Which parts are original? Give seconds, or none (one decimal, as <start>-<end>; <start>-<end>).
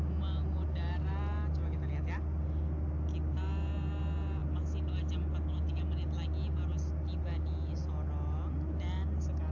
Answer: 0.0-9.5